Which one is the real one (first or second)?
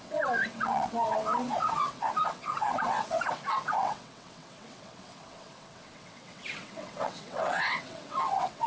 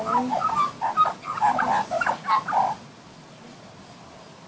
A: second